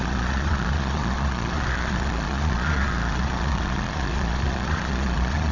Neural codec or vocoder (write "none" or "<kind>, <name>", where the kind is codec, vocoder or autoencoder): vocoder, Vocos